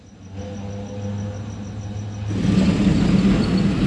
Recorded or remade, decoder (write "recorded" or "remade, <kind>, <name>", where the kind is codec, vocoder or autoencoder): recorded